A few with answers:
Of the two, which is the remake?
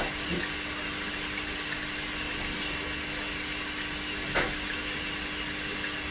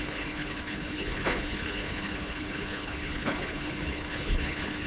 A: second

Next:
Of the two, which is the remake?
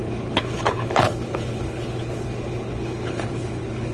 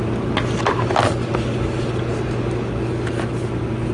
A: first